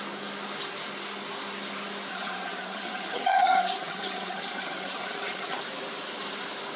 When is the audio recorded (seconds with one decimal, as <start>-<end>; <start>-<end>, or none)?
0.0-2.1; 5.6-6.8